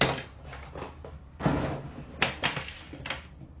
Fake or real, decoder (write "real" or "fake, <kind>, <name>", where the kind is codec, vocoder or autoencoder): real